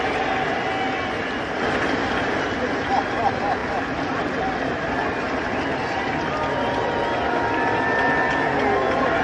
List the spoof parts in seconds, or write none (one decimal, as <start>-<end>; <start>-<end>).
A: none